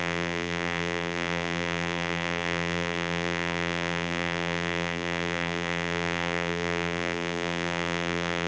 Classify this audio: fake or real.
fake